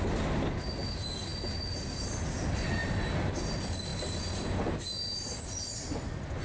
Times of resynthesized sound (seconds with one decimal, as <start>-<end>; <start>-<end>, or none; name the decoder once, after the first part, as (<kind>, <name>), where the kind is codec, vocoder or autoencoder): none